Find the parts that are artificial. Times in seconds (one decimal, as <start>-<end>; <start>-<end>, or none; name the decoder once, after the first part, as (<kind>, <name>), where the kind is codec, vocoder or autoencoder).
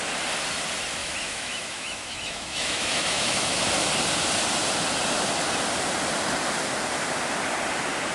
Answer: 1.0-3.6 (autoencoder, DAC-VAE)